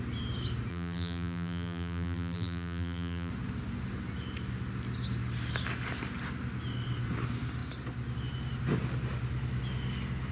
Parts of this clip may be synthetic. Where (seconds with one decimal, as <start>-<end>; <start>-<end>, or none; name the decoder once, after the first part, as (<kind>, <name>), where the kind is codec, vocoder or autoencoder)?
0.7-3.3 (vocoder, BigVGAN v2)